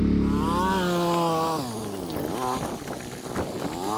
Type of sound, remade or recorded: recorded